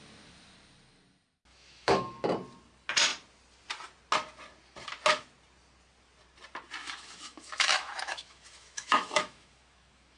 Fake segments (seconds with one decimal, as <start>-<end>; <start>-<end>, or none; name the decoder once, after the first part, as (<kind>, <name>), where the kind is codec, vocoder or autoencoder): 1.5-2.1 (autoencoder, DAC-VAE); 6.8-10.2